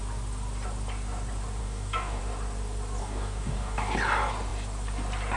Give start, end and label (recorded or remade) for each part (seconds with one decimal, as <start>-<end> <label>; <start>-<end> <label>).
0.0-1.6 recorded; 1.6-2.2 remade; 2.2-3.0 recorded; 3.0-3.9 remade; 3.9-5.4 recorded

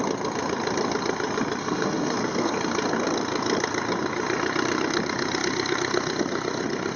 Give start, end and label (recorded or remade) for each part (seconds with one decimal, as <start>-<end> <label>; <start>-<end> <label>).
0.0-1.6 recorded; 1.6-2.5 remade; 2.5-7.0 recorded